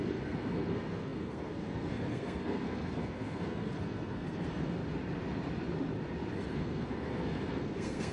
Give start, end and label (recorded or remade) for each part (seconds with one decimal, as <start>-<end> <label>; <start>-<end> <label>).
0.0-4.8 remade; 4.8-6.4 recorded; 6.4-8.1 remade